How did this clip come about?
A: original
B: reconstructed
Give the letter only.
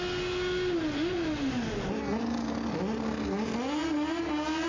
A